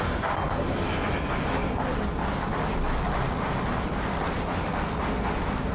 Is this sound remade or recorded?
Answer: recorded